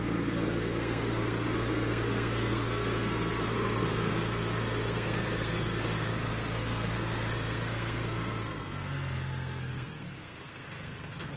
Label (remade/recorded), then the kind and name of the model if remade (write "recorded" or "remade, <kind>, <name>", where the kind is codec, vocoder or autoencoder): remade, codec, SNAC